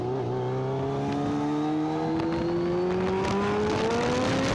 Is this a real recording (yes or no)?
yes